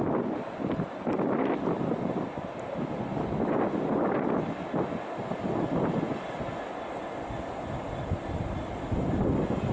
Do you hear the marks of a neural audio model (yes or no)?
no